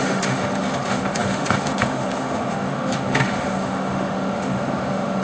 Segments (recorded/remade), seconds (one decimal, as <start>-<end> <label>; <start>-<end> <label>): 0.0-5.2 remade